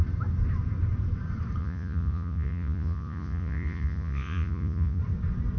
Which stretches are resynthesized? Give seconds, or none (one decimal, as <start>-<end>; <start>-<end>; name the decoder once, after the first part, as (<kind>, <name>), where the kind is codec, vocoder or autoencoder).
1.6-5.0 (vocoder, Vocos)